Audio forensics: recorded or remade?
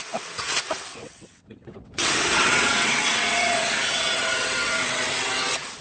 remade